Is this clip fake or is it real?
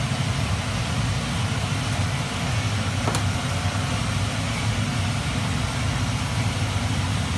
real